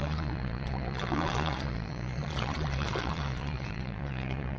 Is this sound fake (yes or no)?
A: yes